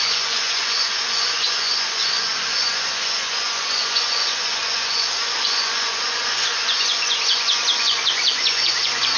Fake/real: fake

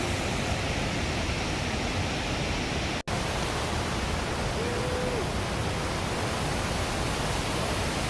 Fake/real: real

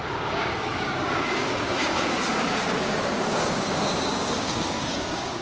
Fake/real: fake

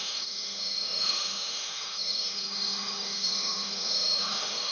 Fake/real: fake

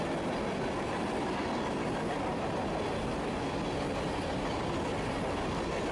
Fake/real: real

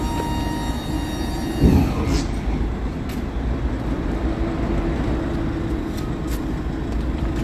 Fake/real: real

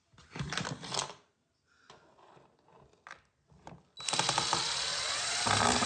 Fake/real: real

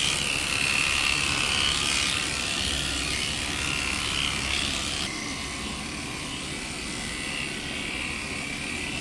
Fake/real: real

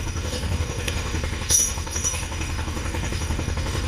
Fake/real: fake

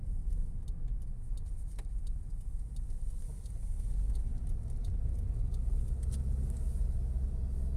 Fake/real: real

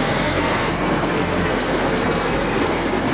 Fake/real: fake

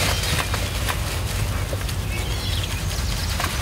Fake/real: real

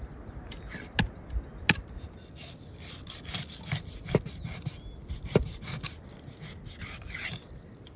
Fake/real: real